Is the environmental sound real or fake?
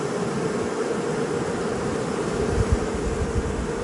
real